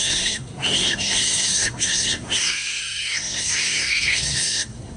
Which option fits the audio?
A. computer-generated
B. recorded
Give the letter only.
A